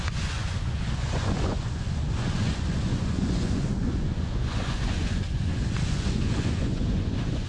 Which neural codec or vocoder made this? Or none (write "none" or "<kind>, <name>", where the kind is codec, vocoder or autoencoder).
vocoder, Vocos